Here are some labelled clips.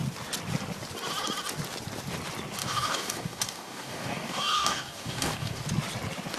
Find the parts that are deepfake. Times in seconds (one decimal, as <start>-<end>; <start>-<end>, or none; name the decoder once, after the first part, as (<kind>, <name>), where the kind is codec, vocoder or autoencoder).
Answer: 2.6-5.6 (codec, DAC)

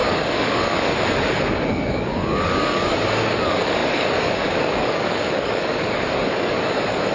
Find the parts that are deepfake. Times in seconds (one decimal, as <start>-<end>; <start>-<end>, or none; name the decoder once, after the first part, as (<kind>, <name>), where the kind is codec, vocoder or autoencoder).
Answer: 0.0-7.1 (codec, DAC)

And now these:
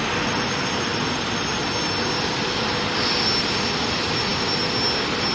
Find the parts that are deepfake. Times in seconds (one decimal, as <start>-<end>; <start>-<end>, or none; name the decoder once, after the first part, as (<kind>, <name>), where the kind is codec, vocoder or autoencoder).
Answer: none